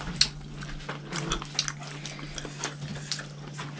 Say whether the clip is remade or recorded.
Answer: recorded